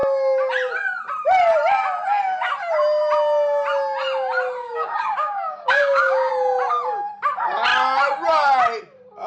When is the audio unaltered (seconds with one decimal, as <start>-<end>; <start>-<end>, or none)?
0.0-4.6; 6.3-9.3